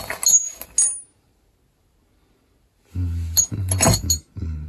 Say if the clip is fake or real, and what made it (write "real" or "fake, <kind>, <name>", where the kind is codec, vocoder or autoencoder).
real